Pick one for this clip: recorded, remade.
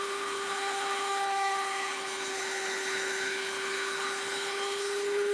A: remade